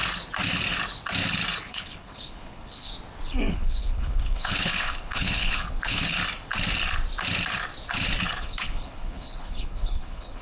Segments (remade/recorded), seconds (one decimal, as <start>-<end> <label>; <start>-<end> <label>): 0.0-1.7 recorded; 1.7-2.9 remade; 2.9-3.5 recorded; 3.5-6.2 remade; 6.2-8.4 recorded; 8.4-10.4 remade